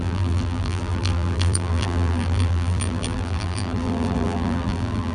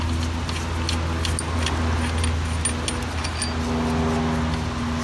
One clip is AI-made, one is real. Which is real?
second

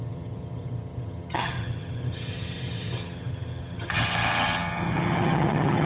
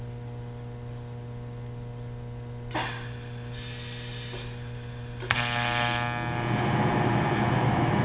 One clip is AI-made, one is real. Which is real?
second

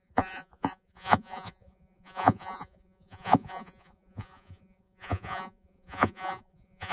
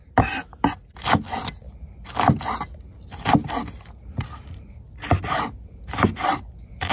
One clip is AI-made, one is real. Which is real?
second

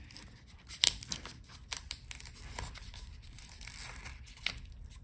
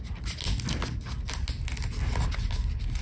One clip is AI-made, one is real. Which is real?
second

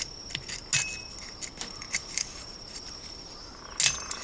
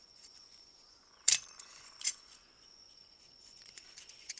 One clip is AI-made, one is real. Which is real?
first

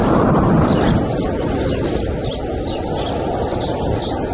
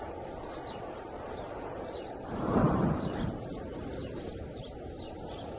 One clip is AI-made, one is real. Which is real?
first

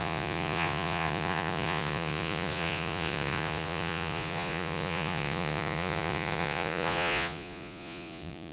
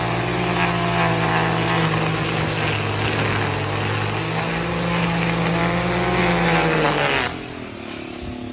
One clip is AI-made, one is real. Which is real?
second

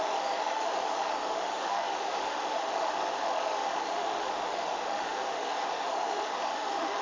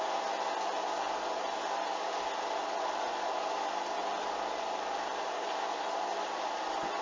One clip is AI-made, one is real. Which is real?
second